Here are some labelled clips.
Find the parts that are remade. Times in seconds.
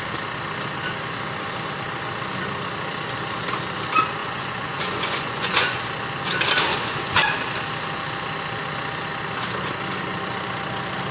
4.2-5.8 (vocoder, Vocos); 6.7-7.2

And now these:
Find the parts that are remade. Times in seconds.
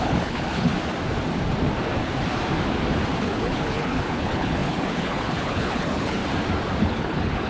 0.0-0.7 (codec, HILCodec); 3.2-6.2; 6.8-7.5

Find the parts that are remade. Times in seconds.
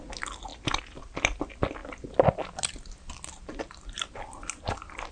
none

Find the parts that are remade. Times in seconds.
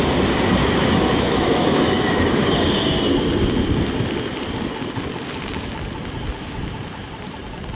0.6-2.2 (autoencoder, DAC-VAE)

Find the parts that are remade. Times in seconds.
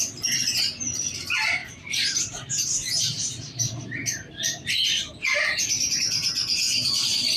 1.6-4.3 (vocoder, BigVGAN v2); 5.3-6.0